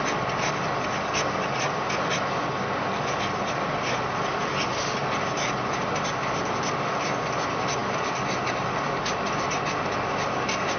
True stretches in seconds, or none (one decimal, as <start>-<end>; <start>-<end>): 0.0-10.8